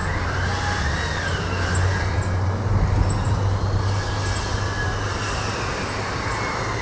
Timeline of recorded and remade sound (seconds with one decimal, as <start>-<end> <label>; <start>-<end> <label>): 0.0-6.8 recorded